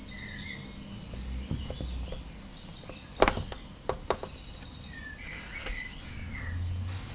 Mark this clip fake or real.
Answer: real